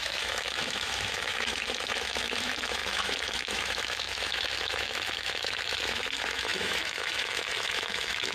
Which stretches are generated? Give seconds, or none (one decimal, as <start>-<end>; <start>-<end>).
0.0-8.3